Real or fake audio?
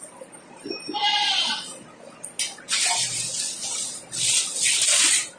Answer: real